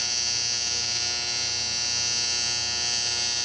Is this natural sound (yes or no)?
yes